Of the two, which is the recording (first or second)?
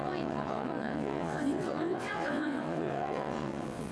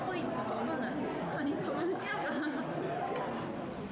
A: second